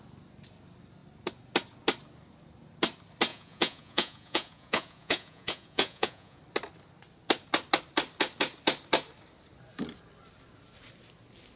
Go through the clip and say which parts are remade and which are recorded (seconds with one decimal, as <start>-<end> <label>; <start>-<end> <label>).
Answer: 0.0-3.3 recorded; 3.3-6.4 remade; 6.4-11.6 recorded